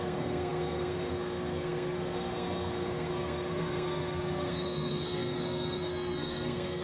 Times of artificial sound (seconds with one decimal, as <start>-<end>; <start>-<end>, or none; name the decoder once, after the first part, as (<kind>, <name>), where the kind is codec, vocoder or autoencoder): 0.0-6.8 (codec, SNAC)